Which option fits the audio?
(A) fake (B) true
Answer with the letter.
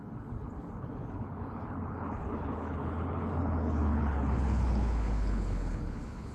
A